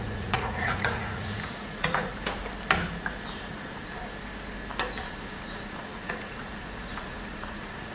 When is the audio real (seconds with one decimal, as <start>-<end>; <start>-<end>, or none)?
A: 2.1-3.4; 3.8-5.0